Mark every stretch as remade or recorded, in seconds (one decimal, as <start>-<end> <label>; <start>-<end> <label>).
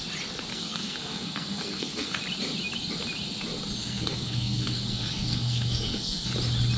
0.0-0.5 recorded; 0.5-2.2 remade; 2.2-3.8 recorded; 3.8-6.3 remade; 6.3-6.8 recorded